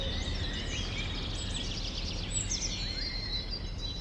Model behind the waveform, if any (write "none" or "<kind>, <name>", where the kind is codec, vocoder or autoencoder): none